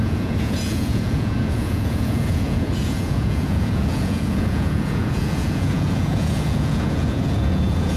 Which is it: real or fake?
fake